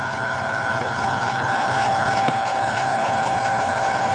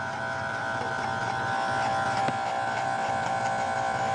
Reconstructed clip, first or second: first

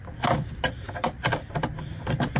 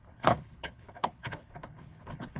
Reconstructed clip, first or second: second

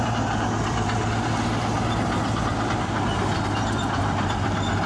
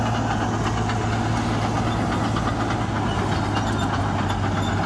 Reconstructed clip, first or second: first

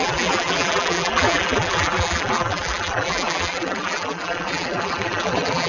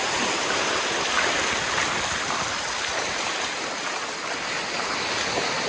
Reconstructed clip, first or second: first